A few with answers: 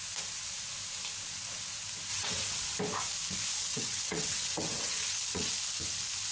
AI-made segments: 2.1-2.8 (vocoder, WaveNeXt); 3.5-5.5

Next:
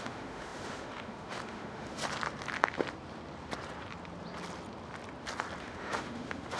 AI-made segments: 0.0-2.0 (autoencoder, DAC-VAE); 5.6-6.6

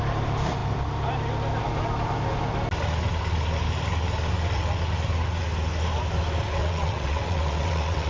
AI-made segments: 6.6-8.1 (vocoder, WaveNeXt)

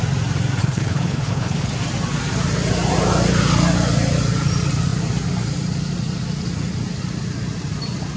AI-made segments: 0.6-1.7 (codec, HILCodec)

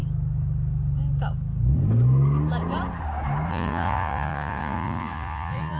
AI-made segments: 3.5-5.8 (vocoder, Vocos)

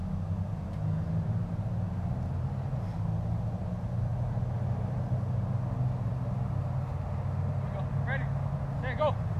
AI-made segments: none